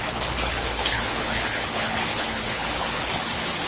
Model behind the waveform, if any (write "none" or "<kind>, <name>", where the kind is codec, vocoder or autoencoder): codec, HILCodec